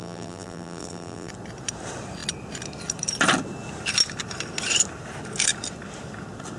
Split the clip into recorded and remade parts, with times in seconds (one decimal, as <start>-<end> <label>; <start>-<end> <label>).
0.0-1.3 remade; 1.3-6.6 recorded